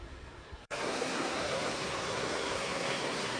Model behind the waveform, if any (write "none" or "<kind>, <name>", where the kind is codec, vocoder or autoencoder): codec, SNAC